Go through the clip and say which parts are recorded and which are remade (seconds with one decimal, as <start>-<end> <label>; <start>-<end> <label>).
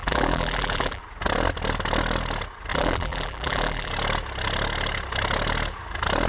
0.0-1.0 remade; 1.0-2.7 recorded; 2.7-3.9 remade; 3.9-6.3 recorded